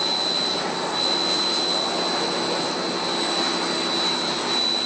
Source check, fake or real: real